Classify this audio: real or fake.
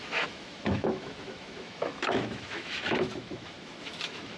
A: fake